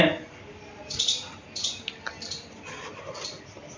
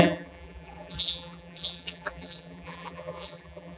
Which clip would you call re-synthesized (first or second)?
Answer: second